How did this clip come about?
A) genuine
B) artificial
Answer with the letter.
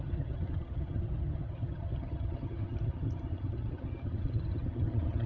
B